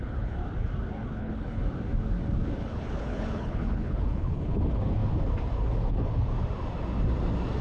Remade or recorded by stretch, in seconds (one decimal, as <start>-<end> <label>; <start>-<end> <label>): 0.0-0.4 remade; 0.4-1.1 recorded; 1.1-1.6 remade; 1.6-2.6 recorded; 2.6-5.0 remade; 5.0-5.8 recorded; 5.8-6.3 remade; 6.3-7.6 recorded